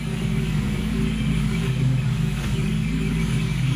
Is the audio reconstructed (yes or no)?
yes